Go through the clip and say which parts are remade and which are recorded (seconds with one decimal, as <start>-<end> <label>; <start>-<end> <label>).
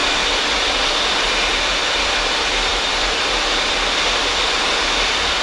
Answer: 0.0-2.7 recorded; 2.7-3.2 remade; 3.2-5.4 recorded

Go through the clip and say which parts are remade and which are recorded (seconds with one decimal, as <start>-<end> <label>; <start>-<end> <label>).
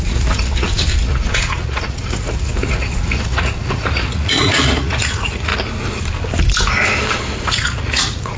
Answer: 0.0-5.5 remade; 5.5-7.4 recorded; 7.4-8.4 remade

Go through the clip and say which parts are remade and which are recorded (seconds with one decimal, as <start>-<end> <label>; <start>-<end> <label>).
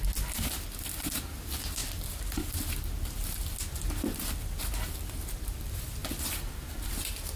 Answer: 0.0-7.4 recorded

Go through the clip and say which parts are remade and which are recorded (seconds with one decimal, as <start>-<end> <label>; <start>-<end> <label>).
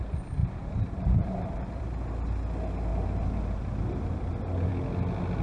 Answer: 0.0-0.4 recorded; 0.4-1.8 remade; 1.8-5.4 recorded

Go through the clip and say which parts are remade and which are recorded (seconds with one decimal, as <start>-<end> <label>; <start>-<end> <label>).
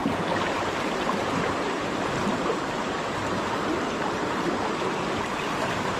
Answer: 0.0-6.0 recorded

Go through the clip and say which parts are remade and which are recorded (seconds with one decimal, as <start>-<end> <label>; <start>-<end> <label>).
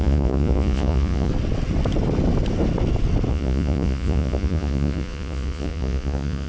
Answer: 0.0-1.3 remade; 1.3-3.3 recorded; 3.3-6.5 remade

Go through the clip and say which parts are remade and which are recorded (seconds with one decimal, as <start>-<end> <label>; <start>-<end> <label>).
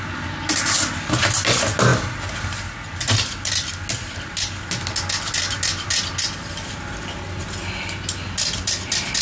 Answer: 0.0-9.2 recorded